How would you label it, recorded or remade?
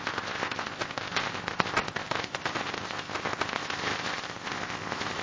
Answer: remade